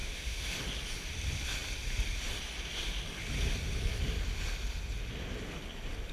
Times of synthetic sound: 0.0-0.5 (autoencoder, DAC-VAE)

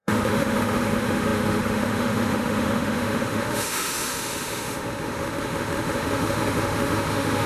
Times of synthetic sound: 0.0-7.5 (autoencoder, DAC-VAE)

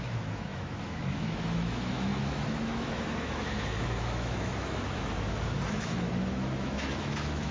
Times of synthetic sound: 0.0-7.5 (autoencoder, DAC-VAE)

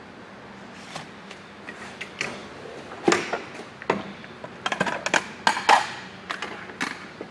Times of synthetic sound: none

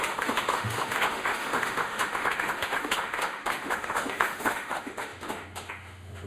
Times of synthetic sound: 0.0-6.3 (autoencoder, DAC-VAE)